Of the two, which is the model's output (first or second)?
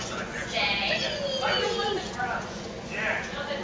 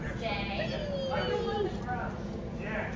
first